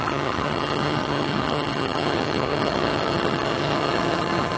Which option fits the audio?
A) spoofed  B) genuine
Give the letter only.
A